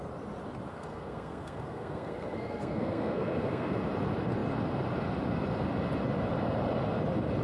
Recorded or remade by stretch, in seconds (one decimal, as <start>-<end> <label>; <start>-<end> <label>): 0.0-0.7 recorded; 0.7-3.8 remade; 3.8-7.4 recorded